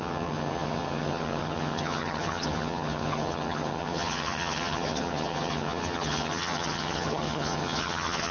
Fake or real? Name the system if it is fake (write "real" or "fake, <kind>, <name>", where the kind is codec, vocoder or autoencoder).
fake, vocoder, HiFi-GAN